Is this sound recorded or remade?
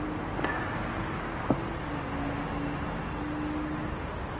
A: recorded